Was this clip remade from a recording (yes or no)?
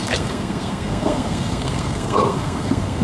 yes